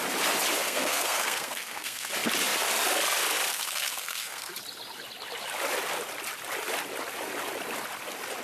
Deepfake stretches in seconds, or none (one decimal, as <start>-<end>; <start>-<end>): 0.6-2.1; 3.5-4.5